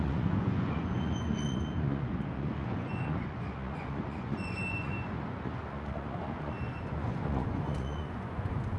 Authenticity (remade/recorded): remade